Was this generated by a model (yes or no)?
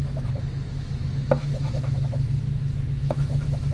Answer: yes